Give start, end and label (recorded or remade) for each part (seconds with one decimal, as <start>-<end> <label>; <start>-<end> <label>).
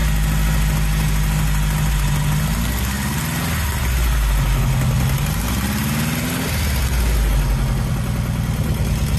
0.0-2.6 recorded; 2.6-3.2 remade; 3.2-9.2 recorded